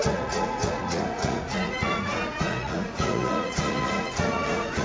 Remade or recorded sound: remade